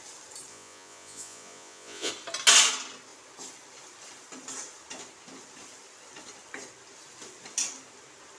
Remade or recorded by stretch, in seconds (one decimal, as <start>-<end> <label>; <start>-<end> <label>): 0.0-0.5 recorded; 0.5-2.1 remade; 2.1-8.4 recorded